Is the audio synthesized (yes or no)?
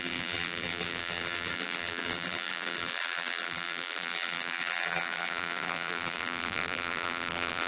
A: yes